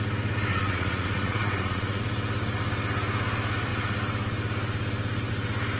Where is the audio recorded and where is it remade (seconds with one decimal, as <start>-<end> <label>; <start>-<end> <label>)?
0.0-0.5 recorded; 0.5-2.0 remade; 2.0-5.8 recorded